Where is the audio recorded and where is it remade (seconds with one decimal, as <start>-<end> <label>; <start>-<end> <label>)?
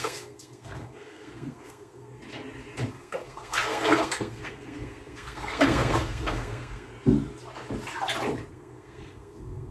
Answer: 0.0-2.2 remade; 2.2-2.9 recorded; 2.9-6.9 remade; 6.9-8.5 recorded; 8.5-9.7 remade